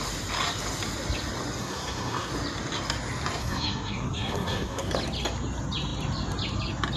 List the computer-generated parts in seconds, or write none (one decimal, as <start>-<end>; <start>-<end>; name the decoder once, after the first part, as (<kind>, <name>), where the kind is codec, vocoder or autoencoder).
1.6-2.3 (codec, SNAC); 3.4-4.9

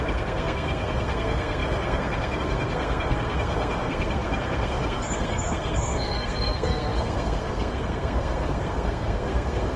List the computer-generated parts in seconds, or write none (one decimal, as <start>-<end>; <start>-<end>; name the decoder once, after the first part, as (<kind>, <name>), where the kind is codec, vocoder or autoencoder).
0.0-9.8 (codec, SNAC)

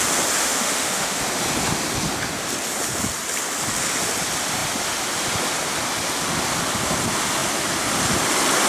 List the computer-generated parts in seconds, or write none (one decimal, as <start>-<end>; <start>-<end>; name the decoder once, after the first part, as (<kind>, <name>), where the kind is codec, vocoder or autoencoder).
0.4-1.2 (autoencoder, DAC-VAE)